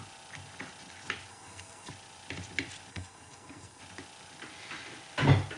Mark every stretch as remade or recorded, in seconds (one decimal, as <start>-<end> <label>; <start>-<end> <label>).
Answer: 0.0-1.3 recorded; 1.3-1.9 remade; 1.9-2.9 recorded; 2.9-3.8 remade; 3.8-5.6 recorded